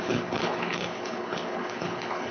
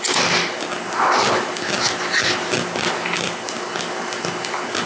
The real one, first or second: second